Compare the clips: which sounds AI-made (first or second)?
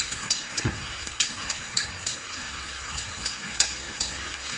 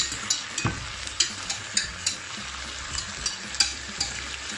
first